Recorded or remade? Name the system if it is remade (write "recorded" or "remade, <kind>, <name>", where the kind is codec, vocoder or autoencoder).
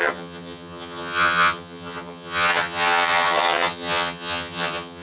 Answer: remade, vocoder, HiFi-GAN